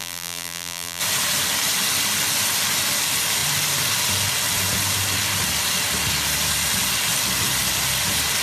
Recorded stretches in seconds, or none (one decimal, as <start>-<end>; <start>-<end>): 1.0-8.4